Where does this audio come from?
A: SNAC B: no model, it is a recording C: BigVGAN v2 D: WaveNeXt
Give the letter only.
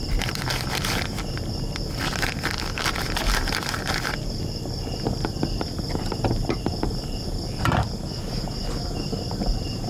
B